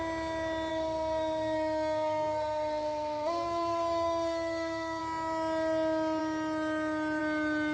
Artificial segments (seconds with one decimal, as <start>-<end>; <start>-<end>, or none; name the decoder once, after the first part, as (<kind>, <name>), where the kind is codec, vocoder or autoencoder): 0.7-5.0 (codec, SNAC)